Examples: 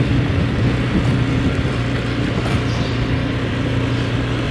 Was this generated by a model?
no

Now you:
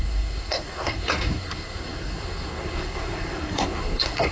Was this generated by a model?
yes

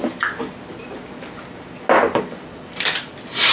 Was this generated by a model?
no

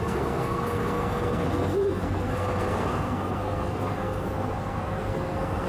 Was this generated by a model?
yes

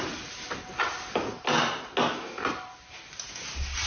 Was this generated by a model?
no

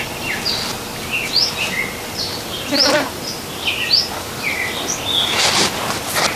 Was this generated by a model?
no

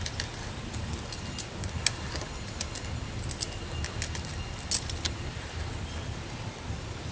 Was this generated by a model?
no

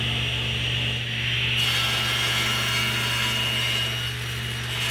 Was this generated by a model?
no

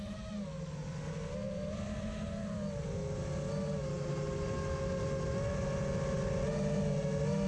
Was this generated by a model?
no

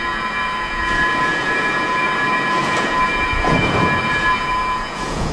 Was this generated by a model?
yes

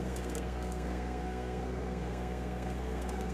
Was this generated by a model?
yes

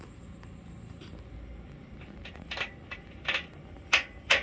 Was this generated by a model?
no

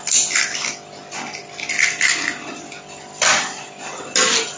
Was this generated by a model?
no